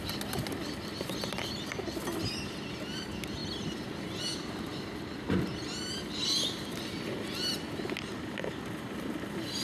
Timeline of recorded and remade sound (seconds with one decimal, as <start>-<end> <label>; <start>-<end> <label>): 0.0-9.6 recorded